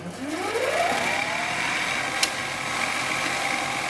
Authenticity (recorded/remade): recorded